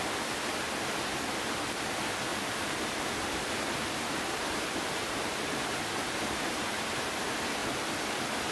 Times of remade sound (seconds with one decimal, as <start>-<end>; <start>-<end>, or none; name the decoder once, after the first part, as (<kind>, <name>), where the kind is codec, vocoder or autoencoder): 2.3-5.9 (vocoder, BigVGAN v2)